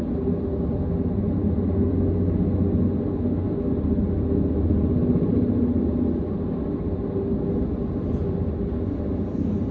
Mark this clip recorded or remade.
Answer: recorded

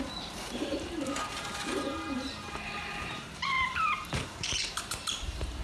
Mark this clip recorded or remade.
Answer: remade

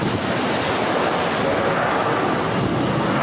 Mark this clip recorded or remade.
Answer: recorded